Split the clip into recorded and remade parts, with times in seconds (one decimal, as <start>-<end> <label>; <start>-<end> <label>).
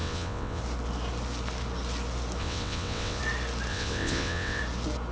0.0-0.6 remade; 0.6-2.4 recorded; 2.4-3.2 remade; 3.2-3.7 recorded; 3.7-4.6 remade; 4.6-5.1 recorded